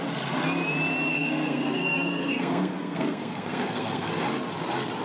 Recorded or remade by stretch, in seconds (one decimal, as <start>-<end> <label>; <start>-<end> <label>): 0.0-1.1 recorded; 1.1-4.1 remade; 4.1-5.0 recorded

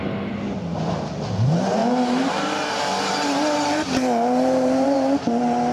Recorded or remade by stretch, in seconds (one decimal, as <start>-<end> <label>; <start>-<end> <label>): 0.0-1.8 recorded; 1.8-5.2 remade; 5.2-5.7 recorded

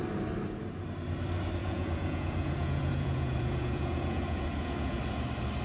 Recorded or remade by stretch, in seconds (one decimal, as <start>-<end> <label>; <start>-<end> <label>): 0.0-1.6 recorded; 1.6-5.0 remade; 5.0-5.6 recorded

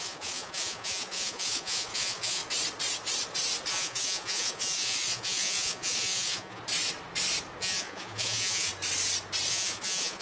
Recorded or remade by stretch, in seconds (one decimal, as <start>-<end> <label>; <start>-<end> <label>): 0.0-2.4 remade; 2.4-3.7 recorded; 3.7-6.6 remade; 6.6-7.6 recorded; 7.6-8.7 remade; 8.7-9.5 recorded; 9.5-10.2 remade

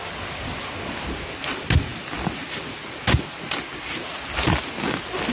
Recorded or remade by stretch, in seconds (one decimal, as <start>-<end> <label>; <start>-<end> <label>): 0.0-5.3 recorded

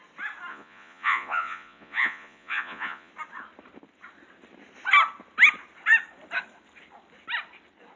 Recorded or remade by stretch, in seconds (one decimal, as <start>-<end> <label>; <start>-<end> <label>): 0.0-0.5 recorded; 0.5-3.1 remade; 3.1-8.0 recorded

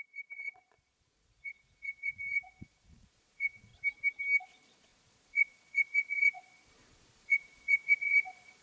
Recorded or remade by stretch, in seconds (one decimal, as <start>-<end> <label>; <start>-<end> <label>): 0.0-3.7 remade; 3.7-4.4 recorded; 4.4-8.6 remade

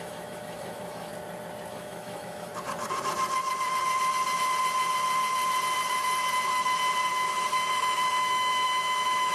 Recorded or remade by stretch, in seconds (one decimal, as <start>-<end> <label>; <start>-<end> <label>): 0.0-1.1 remade; 1.1-1.7 recorded; 1.7-2.5 remade; 2.5-7.1 recorded; 7.1-9.3 remade